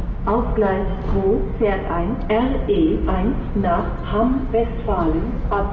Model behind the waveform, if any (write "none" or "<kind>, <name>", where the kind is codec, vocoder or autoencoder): none